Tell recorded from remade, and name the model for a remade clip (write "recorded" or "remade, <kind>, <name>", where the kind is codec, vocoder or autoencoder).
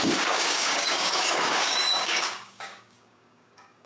remade, codec, DAC